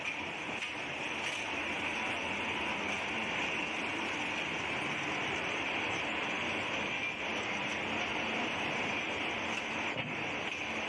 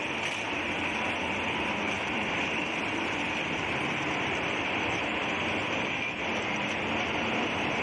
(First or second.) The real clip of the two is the first